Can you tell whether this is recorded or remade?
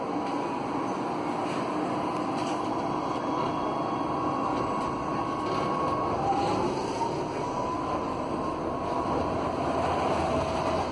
recorded